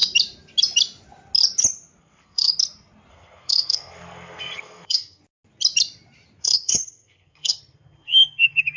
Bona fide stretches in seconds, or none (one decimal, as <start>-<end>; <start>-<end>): 0.0-2.0; 2.5-3.1; 5.2-6.4